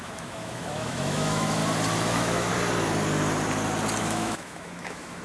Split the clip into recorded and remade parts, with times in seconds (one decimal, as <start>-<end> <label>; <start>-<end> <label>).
0.0-1.6 remade; 1.6-2.1 recorded; 2.1-2.5 remade; 2.5-4.0 recorded; 4.0-5.2 remade